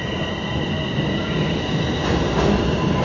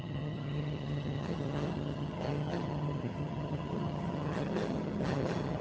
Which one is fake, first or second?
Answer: second